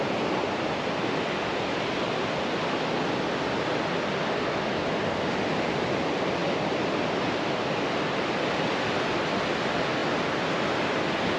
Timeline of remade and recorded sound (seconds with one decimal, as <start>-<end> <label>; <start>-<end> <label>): 0.0-11.4 recorded